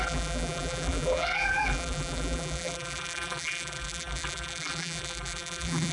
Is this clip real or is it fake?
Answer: fake